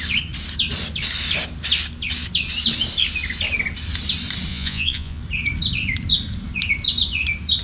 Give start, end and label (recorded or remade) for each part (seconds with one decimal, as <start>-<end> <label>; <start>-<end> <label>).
0.0-4.5 recorded; 4.5-5.2 remade; 5.2-7.6 recorded